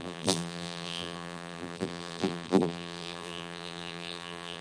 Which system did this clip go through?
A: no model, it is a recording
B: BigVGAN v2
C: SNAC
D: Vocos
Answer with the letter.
B